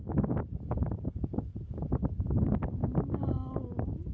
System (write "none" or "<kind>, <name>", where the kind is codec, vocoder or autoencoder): none